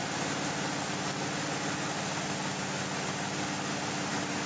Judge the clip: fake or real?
real